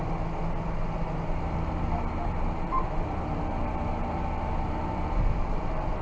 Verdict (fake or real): real